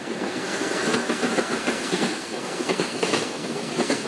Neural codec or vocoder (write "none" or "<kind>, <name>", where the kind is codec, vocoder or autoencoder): codec, SNAC